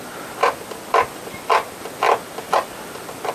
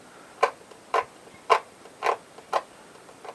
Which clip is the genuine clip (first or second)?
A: first